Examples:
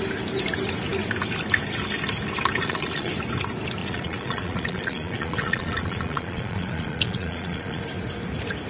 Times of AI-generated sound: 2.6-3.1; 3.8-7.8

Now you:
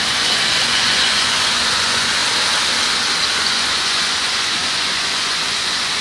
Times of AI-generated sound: 0.0-2.2; 3.3-6.0

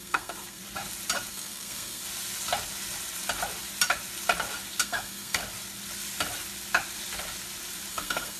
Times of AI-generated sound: 0.0-0.6; 1.3-2.0; 4.8-5.4; 7.9-8.4

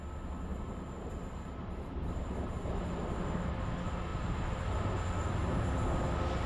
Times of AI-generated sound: 0.5-3.5; 4.1-5.0

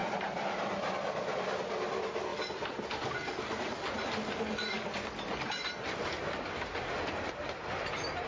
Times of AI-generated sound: none